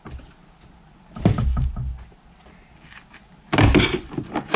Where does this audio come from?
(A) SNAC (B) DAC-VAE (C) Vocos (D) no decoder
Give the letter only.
D